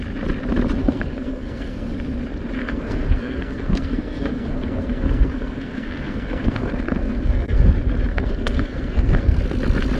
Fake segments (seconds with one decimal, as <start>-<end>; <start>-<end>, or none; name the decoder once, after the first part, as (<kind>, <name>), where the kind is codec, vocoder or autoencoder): 0.8-1.9 (codec, SNAC); 2.6-7.7; 8.1-9.4